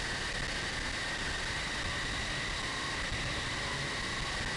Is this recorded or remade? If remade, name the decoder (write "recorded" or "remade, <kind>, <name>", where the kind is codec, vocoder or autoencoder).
recorded